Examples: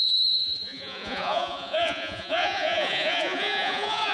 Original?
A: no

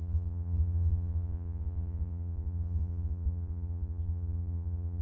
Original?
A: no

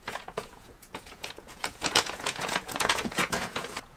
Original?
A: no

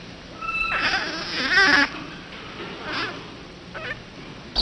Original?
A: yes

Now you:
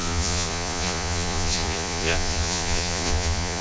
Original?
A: no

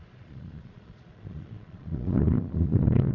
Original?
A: no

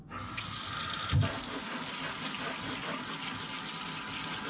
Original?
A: yes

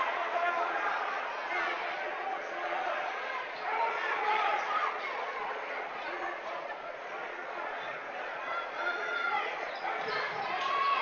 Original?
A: no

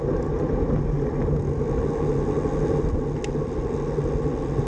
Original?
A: yes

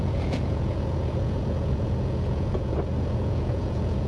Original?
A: no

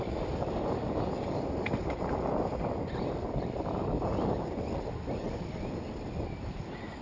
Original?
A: yes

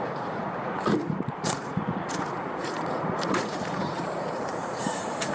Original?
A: no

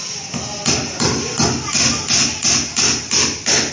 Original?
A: yes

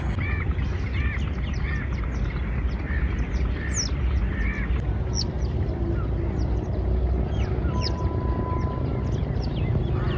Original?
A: yes